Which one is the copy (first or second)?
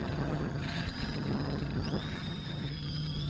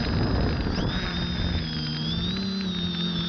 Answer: first